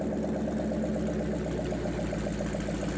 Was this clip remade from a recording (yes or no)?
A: no